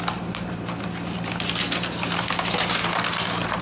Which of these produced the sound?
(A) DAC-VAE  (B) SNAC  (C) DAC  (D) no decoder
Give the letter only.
D